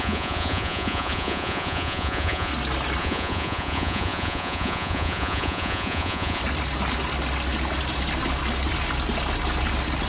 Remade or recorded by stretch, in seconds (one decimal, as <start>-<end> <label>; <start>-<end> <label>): 0.0-2.5 remade; 2.5-3.0 recorded; 3.0-6.4 remade; 6.4-10.1 recorded